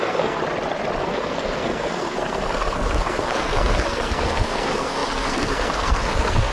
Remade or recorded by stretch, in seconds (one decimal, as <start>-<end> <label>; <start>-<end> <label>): 0.0-0.4 remade; 0.4-1.0 recorded; 1.0-6.5 remade